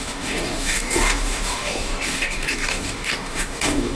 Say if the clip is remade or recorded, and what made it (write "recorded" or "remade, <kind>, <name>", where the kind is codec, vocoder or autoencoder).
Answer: remade, codec, DAC